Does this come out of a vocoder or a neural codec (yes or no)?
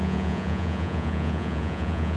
yes